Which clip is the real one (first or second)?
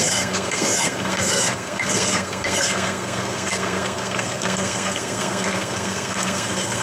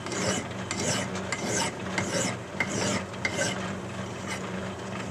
second